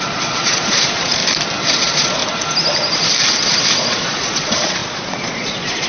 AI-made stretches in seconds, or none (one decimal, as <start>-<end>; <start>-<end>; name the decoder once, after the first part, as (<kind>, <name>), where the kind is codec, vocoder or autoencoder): 0.0-1.2 (vocoder, Vocos); 1.7-2.2; 3.8-5.9

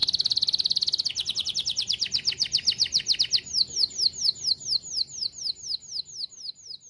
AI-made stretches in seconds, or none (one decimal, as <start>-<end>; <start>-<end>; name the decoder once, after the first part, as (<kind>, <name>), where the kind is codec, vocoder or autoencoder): none

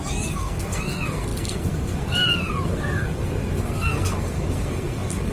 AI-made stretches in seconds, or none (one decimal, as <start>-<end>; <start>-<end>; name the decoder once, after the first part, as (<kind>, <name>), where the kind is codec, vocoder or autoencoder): 0.0-5.3 (codec, SNAC)

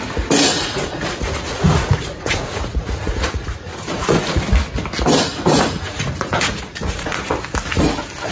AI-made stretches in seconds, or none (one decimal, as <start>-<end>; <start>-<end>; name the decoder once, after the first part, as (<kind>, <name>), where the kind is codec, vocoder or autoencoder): 0.5-4.4 (vocoder, Vocos); 5.3-7.2

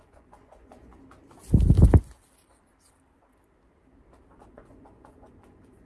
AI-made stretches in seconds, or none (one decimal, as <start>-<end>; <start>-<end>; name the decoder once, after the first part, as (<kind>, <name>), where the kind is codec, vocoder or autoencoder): 0.0-0.9 (vocoder, Vocos); 4.4-5.9

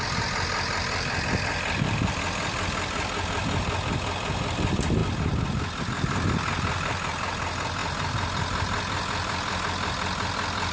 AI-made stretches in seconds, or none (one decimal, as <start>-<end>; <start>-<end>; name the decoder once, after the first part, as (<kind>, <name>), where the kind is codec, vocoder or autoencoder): none

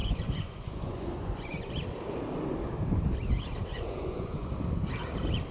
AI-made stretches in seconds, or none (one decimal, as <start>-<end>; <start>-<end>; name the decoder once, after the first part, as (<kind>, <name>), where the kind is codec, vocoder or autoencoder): 0.0-1.7 (vocoder, Vocos); 3.7-4.5

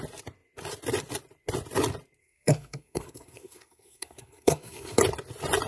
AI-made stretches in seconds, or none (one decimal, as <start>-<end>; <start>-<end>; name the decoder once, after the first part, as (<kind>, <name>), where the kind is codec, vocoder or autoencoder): 2.2-5.0 (codec, SNAC)